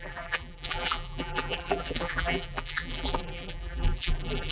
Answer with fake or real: fake